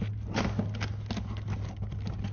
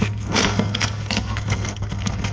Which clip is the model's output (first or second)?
second